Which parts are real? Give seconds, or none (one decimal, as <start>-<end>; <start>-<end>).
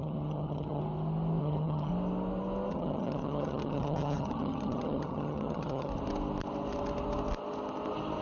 0.8-1.4; 1.9-2.7; 5.9-8.2